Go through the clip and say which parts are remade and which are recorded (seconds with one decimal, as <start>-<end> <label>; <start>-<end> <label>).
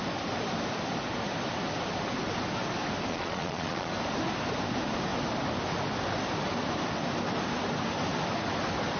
0.0-3.1 recorded; 3.1-3.9 remade; 3.9-9.0 recorded